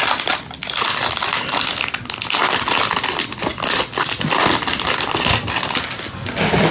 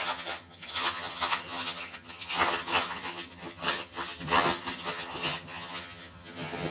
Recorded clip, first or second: first